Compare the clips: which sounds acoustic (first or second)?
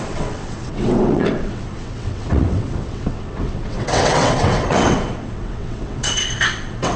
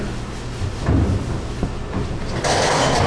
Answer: second